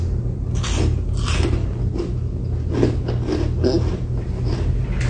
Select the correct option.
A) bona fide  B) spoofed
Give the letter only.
A